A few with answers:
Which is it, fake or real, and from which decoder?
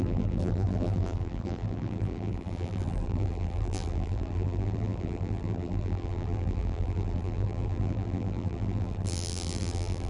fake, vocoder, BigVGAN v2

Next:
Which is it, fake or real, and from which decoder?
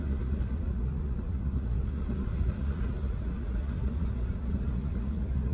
fake, vocoder, Vocos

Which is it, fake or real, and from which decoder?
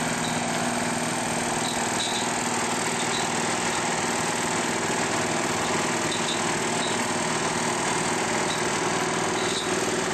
real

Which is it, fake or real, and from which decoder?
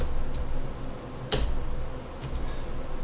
real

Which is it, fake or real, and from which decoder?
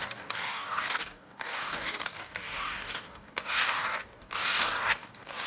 fake, codec, DAC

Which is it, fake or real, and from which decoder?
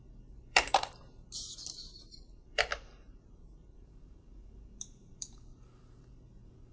fake, vocoder, BigVGAN v2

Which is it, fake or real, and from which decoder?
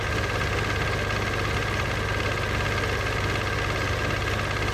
real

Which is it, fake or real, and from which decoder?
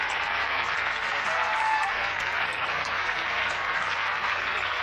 fake, codec, SNAC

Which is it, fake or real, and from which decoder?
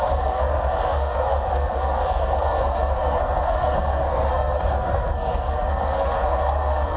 fake, codec, SNAC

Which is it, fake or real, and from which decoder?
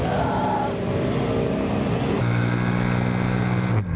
real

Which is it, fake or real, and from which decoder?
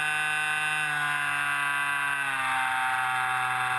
real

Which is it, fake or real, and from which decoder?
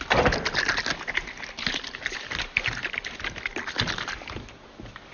real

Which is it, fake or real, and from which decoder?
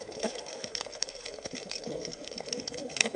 fake, codec, SNAC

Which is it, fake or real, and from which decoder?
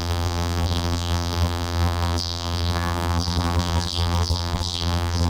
fake, vocoder, BigVGAN v2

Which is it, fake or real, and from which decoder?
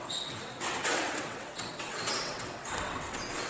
fake, vocoder, WaveNeXt